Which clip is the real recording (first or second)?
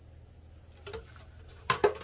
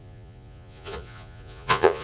first